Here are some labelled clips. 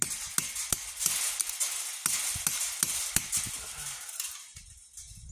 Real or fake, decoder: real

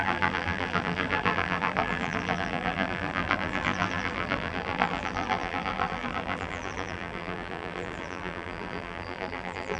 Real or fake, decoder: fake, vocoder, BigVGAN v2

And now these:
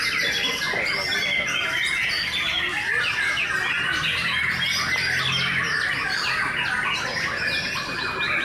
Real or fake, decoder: real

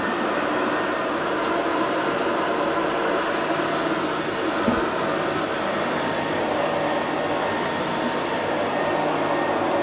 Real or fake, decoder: real